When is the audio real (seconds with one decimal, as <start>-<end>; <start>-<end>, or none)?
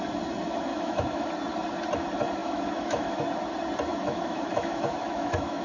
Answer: 0.0-0.7; 1.3-2.4; 3.2-3.9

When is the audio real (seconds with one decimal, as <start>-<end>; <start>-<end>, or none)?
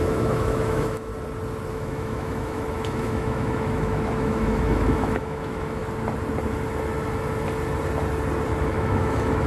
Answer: 1.1-1.7; 5.8-8.6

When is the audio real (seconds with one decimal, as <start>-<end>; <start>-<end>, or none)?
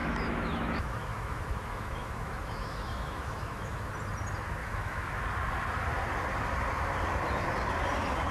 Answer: 3.9-4.6; 5.2-8.3